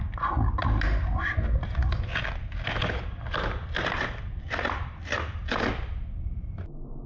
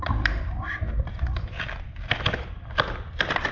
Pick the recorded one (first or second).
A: first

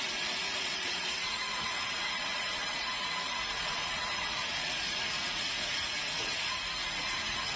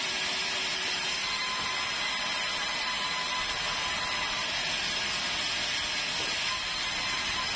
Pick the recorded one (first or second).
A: second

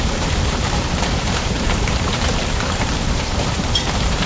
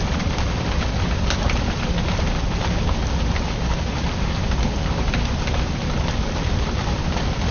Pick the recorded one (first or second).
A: second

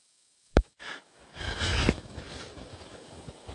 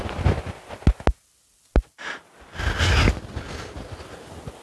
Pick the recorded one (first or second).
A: second